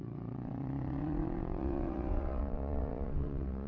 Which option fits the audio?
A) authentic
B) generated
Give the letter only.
B